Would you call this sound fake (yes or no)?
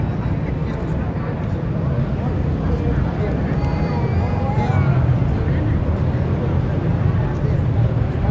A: no